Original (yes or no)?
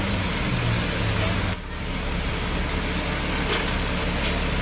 yes